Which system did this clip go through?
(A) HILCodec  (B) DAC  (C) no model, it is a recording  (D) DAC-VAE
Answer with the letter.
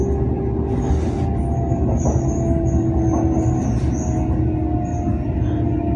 C